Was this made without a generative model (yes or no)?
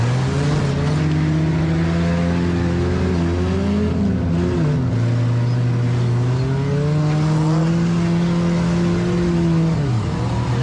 yes